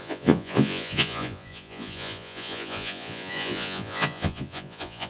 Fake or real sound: fake